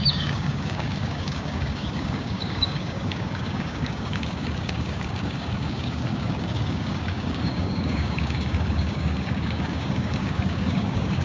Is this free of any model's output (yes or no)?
no